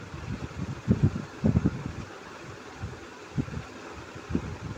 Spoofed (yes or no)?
no